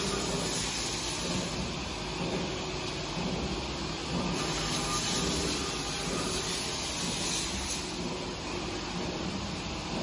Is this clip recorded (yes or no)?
yes